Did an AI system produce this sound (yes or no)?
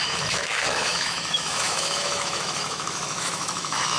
yes